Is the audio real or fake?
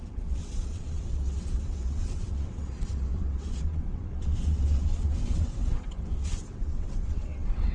fake